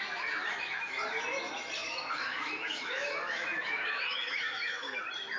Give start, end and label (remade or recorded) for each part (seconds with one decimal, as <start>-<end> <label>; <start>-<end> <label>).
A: 0.0-0.4 recorded; 0.4-0.9 remade; 0.9-1.8 recorded; 1.8-5.0 remade; 5.0-5.4 recorded